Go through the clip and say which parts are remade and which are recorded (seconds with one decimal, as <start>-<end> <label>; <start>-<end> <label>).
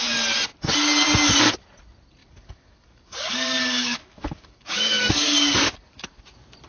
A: 0.0-2.2 recorded; 2.2-6.2 remade; 6.2-6.7 recorded